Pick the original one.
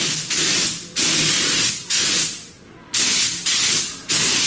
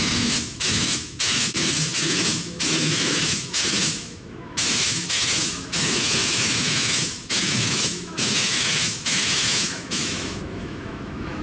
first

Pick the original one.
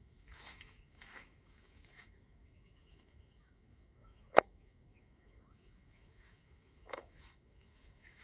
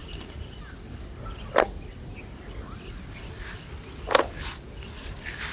second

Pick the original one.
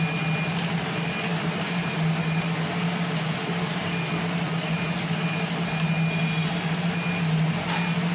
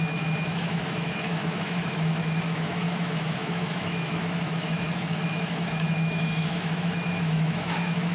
first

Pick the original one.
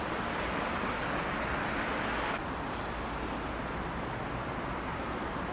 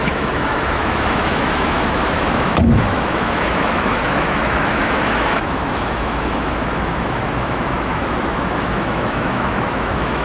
first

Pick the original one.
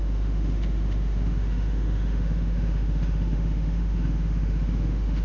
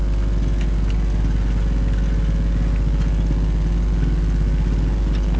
second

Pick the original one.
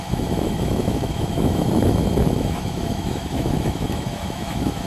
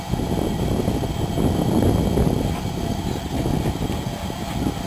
second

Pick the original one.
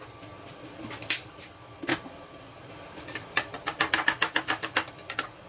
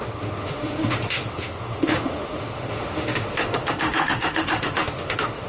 first